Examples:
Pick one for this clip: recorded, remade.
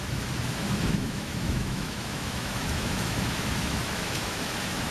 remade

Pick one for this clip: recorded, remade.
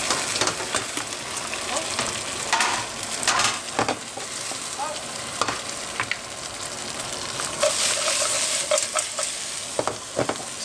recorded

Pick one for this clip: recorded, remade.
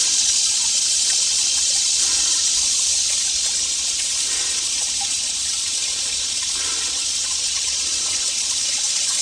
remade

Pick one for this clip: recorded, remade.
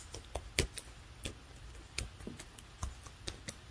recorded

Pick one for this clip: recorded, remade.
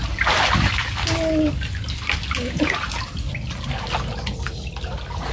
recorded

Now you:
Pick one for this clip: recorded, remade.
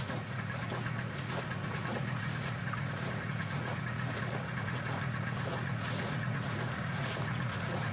remade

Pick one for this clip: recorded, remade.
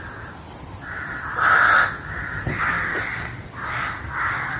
remade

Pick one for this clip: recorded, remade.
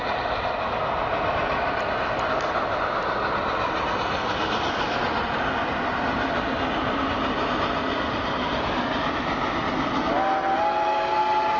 recorded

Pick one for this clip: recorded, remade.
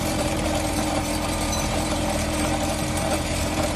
remade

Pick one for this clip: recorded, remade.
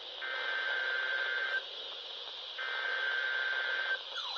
recorded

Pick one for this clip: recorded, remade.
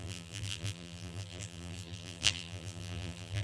remade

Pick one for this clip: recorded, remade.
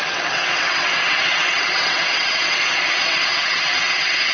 remade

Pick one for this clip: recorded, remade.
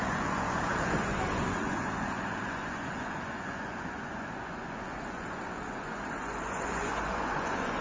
remade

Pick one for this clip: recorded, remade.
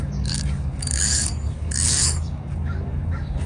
remade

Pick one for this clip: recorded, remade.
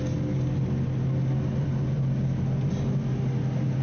recorded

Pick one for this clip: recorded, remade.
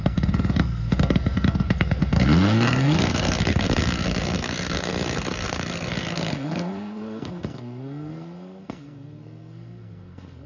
remade